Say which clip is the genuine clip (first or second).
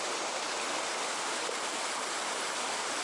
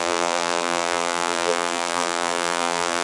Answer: first